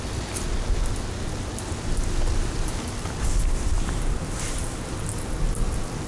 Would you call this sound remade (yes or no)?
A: no